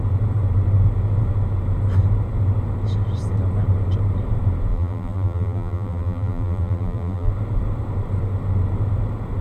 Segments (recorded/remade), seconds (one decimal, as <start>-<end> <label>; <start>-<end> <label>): 0.0-4.7 recorded; 4.7-7.3 remade; 7.3-9.4 recorded